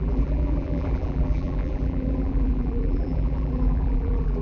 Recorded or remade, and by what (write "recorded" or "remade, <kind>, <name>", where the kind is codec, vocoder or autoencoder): remade, vocoder, BigVGAN v2